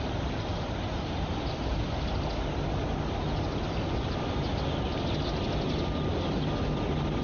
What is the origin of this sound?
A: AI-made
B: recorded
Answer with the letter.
B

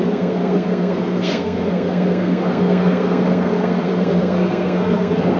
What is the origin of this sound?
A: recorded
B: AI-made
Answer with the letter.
B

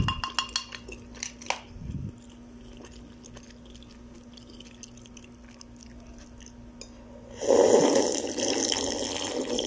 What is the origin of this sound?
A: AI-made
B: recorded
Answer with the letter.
B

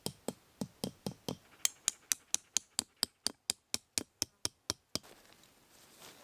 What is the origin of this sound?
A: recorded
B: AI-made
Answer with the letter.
A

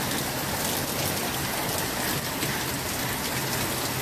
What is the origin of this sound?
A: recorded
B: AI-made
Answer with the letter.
A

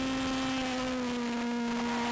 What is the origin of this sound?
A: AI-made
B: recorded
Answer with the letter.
B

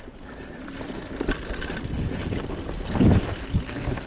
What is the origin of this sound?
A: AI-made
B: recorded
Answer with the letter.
B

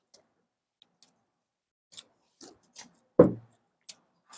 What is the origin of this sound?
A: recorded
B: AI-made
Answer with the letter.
A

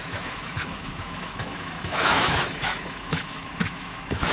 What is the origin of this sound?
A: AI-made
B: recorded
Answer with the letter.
A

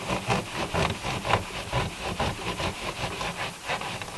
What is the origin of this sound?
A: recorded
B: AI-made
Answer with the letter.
A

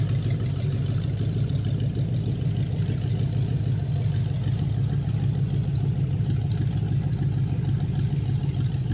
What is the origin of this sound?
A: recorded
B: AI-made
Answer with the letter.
A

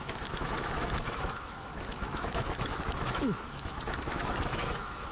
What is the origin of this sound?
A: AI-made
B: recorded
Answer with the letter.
A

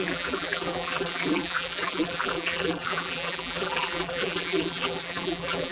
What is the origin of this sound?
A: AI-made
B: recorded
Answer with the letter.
A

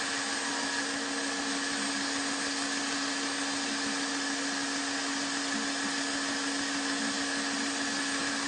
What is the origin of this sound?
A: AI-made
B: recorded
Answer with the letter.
B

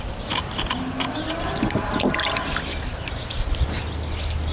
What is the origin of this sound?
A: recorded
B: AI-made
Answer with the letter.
A